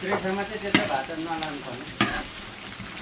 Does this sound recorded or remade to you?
recorded